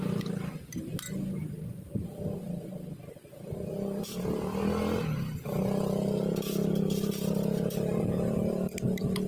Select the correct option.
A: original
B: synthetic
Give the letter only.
A